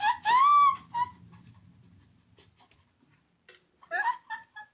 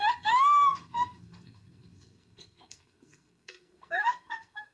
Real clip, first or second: first